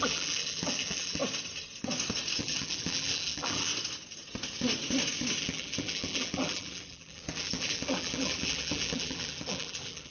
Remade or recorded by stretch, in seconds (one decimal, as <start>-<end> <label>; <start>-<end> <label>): 0.0-1.2 remade; 1.2-2.4 recorded; 2.4-3.7 remade; 3.7-5.4 recorded; 5.4-10.1 remade